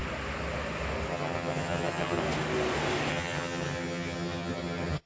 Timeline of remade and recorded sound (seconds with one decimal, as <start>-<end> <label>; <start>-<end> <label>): 0.0-1.1 recorded; 1.1-2.2 remade; 2.2-3.1 recorded; 3.1-5.1 remade